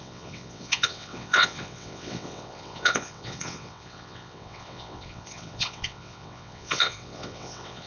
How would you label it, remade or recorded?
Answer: remade